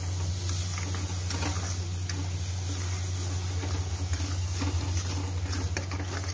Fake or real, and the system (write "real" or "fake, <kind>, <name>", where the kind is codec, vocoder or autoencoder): real